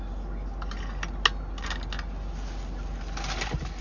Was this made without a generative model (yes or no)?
yes